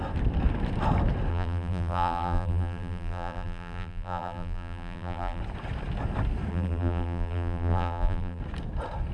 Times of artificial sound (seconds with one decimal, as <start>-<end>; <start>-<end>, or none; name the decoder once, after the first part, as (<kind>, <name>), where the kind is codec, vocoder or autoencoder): 1.3-5.4 (vocoder, BigVGAN v2); 6.5-8.4